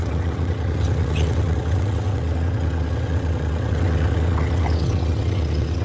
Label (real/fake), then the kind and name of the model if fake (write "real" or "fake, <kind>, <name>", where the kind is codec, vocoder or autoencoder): fake, vocoder, WaveNeXt